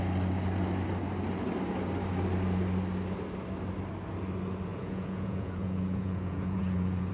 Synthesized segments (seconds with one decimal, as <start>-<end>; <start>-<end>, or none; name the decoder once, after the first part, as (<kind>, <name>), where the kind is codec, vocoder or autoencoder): 4.7-7.1 (vocoder, Vocos)